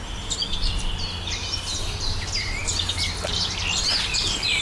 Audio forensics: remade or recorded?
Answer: recorded